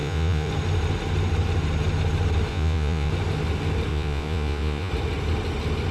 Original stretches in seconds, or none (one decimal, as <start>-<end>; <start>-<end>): 0.5-2.5; 3.1-3.9; 4.9-5.9